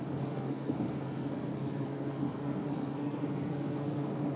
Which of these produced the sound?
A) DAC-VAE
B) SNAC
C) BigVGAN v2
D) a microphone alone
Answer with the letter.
B